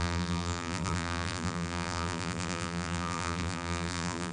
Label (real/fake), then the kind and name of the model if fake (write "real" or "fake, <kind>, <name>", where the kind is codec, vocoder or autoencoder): fake, vocoder, BigVGAN v2